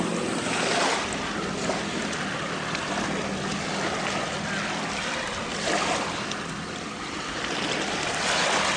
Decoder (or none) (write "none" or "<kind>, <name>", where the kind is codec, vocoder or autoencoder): none